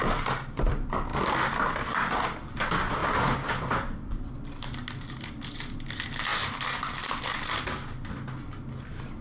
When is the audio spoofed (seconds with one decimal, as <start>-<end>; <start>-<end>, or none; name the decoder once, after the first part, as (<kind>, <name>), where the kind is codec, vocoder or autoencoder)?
3.0-4.3 (vocoder, BigVGAN v2)